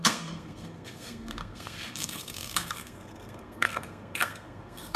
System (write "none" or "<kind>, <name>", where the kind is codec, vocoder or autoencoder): codec, SNAC